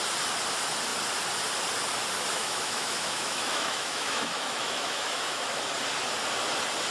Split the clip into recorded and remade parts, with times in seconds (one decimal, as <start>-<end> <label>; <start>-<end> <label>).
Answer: 0.0-2.3 recorded; 2.3-5.6 remade; 5.6-6.9 recorded